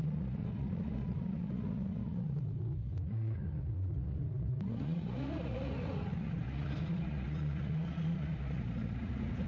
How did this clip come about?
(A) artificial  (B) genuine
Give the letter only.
A